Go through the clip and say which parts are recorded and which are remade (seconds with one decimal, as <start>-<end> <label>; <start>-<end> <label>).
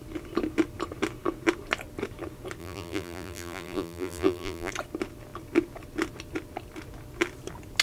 0.0-2.6 recorded; 2.6-4.7 remade; 4.7-7.8 recorded